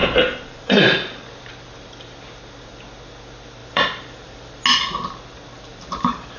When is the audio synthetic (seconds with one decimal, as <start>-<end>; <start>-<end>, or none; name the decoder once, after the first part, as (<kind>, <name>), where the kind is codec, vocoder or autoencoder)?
0.0-0.8 (vocoder, BigVGAN v2); 3.6-4.5; 5.7-6.4